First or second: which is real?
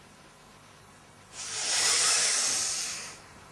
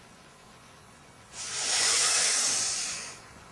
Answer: first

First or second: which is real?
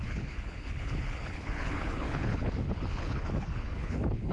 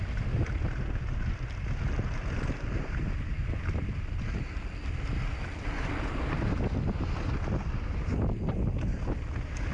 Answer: second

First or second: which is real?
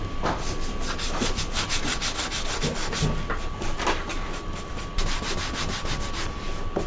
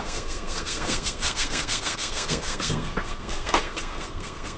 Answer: first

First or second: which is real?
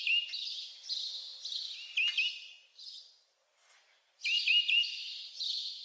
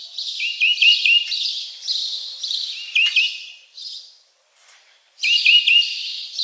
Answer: first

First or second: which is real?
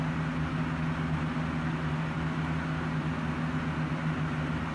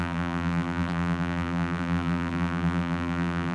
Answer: first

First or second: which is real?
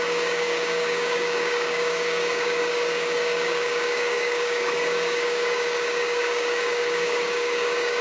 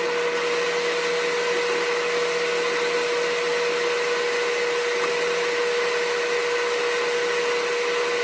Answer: second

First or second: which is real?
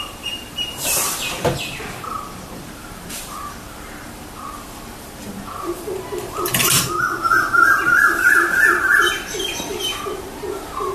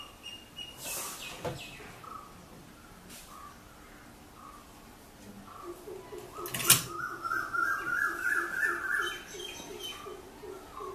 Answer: second